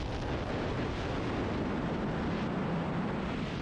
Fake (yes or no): no